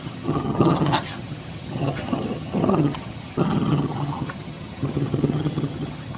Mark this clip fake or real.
fake